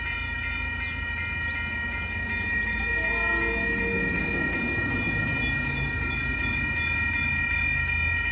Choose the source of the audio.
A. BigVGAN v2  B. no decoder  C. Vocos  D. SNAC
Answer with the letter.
B